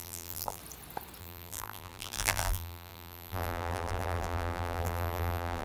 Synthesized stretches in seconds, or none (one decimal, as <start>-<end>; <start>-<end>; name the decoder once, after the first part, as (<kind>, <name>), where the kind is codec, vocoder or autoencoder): 0.0-0.6 (vocoder, BigVGAN v2); 1.2-5.6